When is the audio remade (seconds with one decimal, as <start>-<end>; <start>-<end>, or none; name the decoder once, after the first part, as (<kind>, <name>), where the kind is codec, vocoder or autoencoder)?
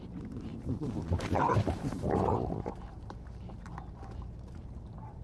0.0-5.2 (vocoder, BigVGAN v2)